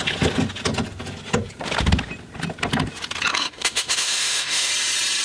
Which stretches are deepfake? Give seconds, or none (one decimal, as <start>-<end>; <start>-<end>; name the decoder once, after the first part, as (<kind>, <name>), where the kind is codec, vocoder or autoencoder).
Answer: 3.3-4.7 (autoencoder, DAC-VAE)